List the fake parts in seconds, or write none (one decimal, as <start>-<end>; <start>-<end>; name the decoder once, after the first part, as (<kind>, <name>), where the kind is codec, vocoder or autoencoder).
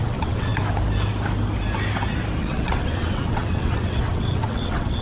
0.0-0.5 (vocoder, WaveNeXt); 2.4-5.0